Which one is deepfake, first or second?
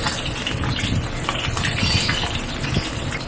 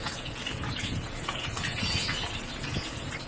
second